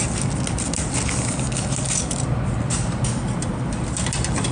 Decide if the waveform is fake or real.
real